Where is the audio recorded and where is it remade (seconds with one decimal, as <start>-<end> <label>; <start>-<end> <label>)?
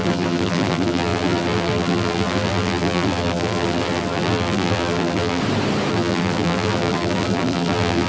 0.0-5.4 remade; 5.4-5.9 recorded; 5.9-8.1 remade